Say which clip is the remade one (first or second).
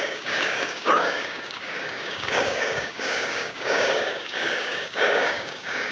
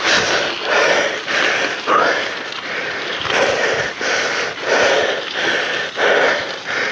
first